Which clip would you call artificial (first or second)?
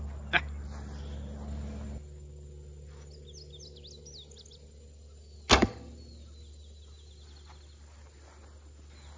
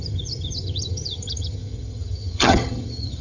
second